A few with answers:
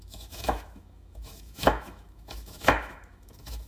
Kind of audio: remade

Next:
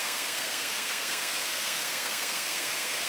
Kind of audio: remade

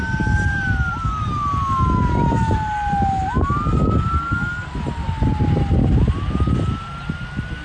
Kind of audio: recorded